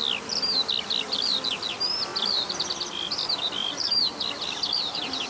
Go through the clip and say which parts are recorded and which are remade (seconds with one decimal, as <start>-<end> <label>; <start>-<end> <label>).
0.0-2.1 recorded; 2.1-3.1 remade; 3.1-3.6 recorded; 3.6-5.3 remade